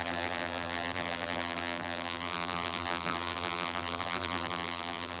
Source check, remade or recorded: remade